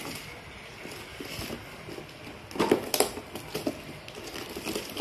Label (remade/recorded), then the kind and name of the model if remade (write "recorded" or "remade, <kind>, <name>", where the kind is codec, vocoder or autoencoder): recorded